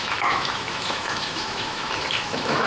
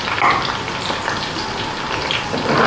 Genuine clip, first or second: second